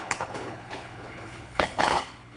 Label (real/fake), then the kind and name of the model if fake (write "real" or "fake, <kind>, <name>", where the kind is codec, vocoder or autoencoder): fake, codec, HILCodec